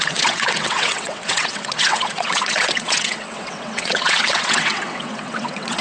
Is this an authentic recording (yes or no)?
no